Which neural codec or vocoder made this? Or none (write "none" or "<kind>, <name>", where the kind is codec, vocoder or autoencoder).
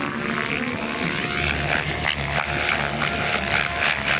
none